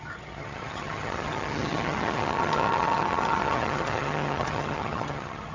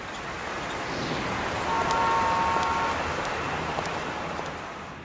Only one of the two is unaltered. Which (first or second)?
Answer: second